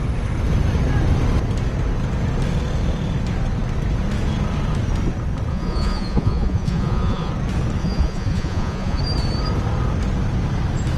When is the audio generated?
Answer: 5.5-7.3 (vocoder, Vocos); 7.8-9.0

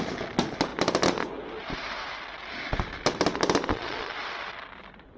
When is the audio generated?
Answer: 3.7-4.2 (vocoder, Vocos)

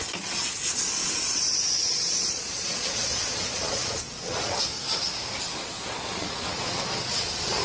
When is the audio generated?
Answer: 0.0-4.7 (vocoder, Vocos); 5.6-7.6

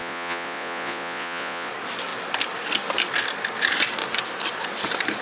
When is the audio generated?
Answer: 0.0-1.7 (vocoder, Vocos)

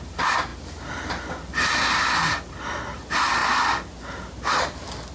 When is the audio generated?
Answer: none

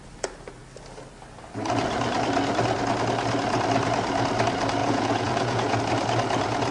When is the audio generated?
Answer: 4.8-5.8 (vocoder, Vocos)

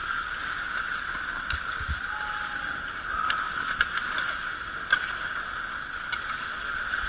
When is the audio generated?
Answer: none